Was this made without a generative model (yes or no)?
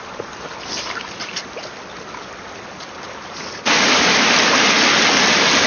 yes